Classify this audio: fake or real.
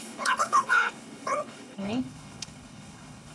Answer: fake